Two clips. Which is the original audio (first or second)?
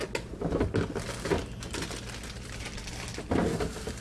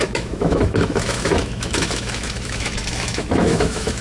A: first